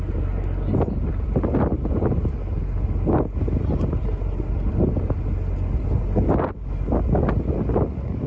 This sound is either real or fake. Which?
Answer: real